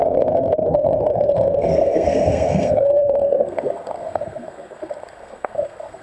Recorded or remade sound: remade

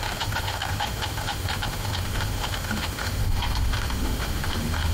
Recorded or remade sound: remade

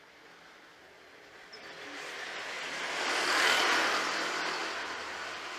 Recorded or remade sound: recorded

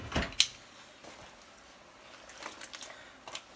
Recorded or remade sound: recorded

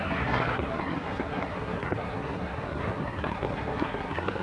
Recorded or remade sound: remade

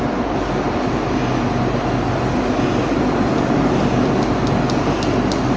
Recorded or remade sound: recorded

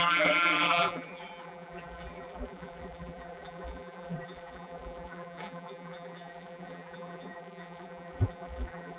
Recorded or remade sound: remade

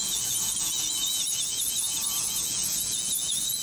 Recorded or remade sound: remade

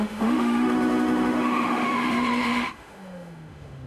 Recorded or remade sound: remade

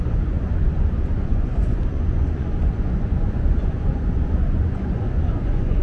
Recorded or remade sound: remade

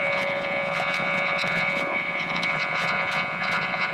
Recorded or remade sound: remade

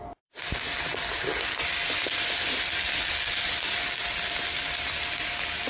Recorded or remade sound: recorded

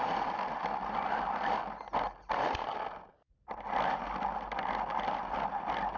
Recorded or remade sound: recorded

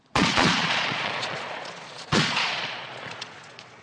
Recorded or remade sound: remade